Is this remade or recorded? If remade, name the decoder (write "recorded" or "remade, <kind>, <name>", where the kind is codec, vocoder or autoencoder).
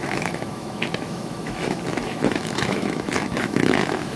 remade, autoencoder, DAC-VAE